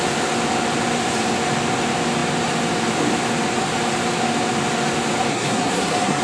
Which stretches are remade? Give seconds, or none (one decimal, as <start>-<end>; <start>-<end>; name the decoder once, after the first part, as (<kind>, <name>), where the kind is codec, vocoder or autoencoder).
5.3-6.2 (codec, SNAC)